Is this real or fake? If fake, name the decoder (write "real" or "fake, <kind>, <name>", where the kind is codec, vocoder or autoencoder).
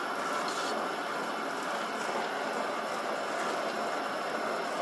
real